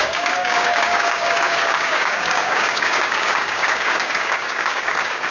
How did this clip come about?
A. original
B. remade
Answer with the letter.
B